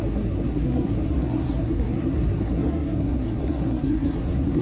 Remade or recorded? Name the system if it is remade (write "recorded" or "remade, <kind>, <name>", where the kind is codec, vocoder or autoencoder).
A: remade, codec, SNAC